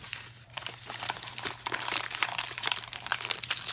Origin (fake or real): fake